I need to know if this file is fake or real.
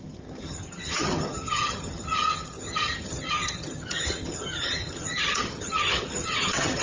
fake